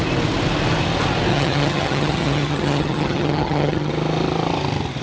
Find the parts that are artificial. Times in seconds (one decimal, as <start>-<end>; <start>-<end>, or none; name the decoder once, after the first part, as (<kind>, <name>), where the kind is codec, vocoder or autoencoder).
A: 1.3-3.9 (vocoder, HiFi-GAN)